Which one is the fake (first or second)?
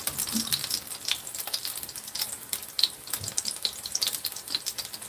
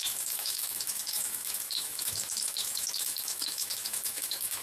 second